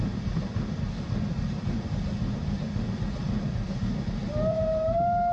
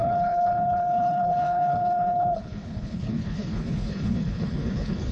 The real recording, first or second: first